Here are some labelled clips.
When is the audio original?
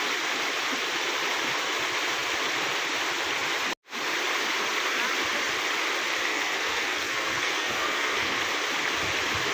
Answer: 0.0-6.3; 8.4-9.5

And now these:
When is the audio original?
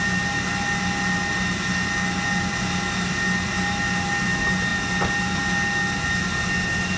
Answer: 0.0-7.0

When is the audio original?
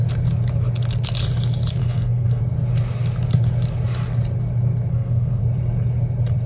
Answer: 0.0-1.8; 2.4-4.9; 5.4-6.5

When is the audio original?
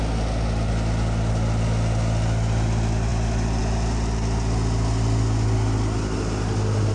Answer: 0.0-6.9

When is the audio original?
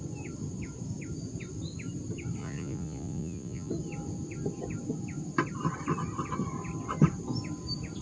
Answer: 0.0-2.4; 3.7-8.0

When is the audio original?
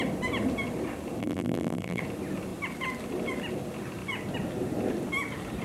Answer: 0.0-1.2; 2.0-5.6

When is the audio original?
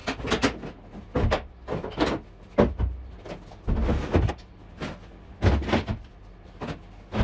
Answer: 0.0-7.2